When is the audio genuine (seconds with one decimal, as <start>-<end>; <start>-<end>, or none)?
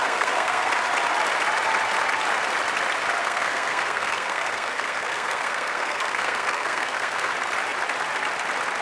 0.7-3.2; 7.3-8.8